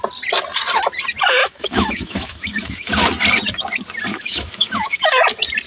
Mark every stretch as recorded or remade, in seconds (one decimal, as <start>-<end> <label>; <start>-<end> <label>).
0.0-1.4 recorded; 1.4-2.9 remade; 2.9-4.1 recorded; 4.1-5.2 remade; 5.2-5.7 recorded